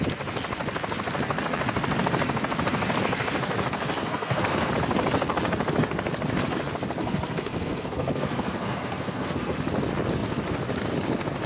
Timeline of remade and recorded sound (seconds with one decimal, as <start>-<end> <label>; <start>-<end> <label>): 0.0-4.0 recorded; 4.0-4.7 remade; 4.7-7.0 recorded; 7.0-9.6 remade; 9.6-11.5 recorded

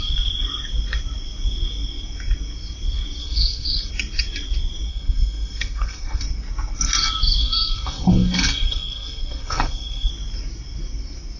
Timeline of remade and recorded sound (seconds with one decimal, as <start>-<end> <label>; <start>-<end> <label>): 0.0-3.2 recorded; 3.2-3.9 remade; 3.9-4.9 recorded; 4.9-6.2 remade; 6.2-7.4 recorded; 7.4-10.1 remade; 10.1-11.4 recorded

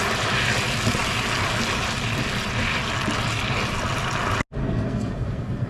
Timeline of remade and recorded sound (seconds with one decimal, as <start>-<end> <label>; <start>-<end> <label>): 0.0-4.6 recorded; 4.6-5.7 remade

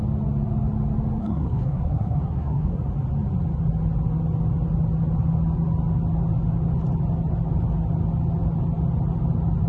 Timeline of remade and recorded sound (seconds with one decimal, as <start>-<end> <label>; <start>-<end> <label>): 0.0-1.2 recorded; 1.2-2.9 remade; 2.9-9.7 recorded

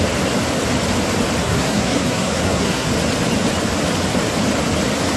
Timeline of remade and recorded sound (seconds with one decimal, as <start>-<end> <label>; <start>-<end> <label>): 0.0-1.4 recorded; 1.4-2.9 remade; 2.9-5.2 recorded

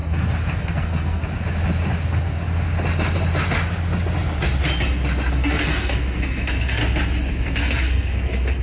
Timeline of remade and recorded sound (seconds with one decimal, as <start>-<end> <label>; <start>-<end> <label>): 0.0-0.6 recorded; 0.6-1.2 remade; 1.2-5.3 recorded; 5.3-6.8 remade; 6.8-7.3 recorded; 7.3-8.6 remade

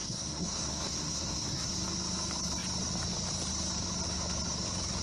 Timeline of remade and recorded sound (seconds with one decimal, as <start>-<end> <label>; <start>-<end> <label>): 0.0-1.7 remade; 1.7-5.0 recorded